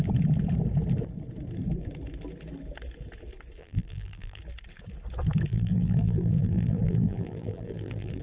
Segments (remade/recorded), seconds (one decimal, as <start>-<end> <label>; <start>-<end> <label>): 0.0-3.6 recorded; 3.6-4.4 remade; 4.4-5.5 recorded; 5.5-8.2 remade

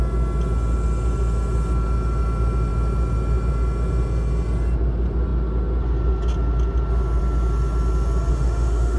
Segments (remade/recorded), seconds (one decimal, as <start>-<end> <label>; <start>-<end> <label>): 0.0-8.3 recorded; 8.3-9.0 remade

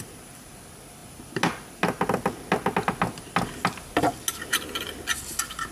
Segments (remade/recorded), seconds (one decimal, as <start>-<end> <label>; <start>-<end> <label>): 0.0-5.7 recorded